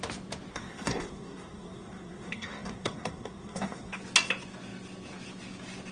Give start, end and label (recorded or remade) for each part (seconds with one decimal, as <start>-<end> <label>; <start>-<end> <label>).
0.0-0.5 recorded; 0.5-4.0 remade; 4.0-5.9 recorded